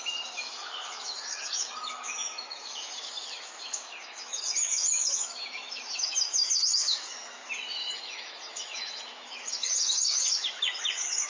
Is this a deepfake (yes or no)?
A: yes